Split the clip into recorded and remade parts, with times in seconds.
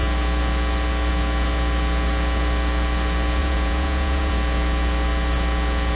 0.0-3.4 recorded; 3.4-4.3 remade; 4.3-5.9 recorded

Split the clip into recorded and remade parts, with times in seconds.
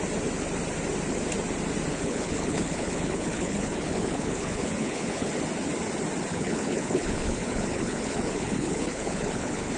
0.0-1.9 recorded; 1.9-5.3 remade; 5.3-6.3 recorded; 6.3-9.8 remade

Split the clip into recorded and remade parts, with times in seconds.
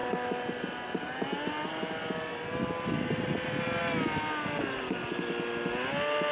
0.0-6.3 recorded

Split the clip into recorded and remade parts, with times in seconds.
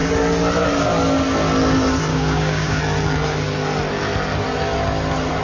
0.0-2.1 recorded; 2.1-2.8 remade; 2.8-5.4 recorded